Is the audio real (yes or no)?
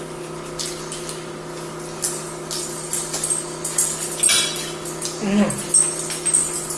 yes